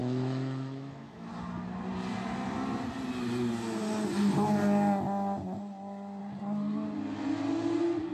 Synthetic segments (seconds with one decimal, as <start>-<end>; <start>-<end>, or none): 0.0-1.3